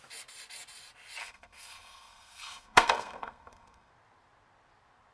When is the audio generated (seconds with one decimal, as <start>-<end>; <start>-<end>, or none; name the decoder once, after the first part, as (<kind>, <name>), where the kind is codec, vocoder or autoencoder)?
1.2-3.9 (codec, SNAC)